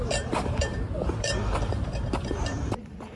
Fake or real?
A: fake